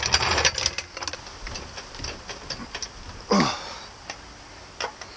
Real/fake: real